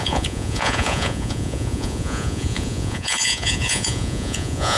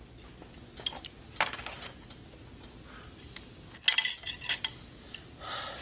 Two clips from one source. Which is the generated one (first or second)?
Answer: first